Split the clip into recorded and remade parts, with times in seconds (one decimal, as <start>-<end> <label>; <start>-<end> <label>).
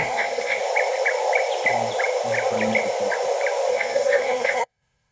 0.0-0.6 remade; 0.6-3.7 recorded; 3.7-5.1 remade